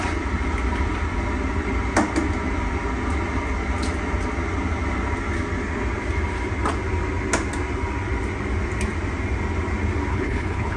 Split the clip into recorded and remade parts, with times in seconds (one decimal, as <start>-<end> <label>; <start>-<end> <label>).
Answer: 0.0-10.1 recorded; 10.1-10.8 remade